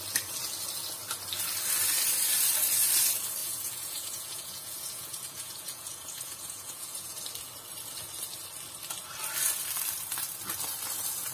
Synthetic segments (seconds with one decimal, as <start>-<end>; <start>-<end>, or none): 3.4-7.2